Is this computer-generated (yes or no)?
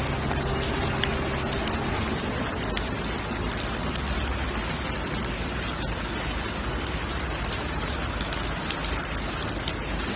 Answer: no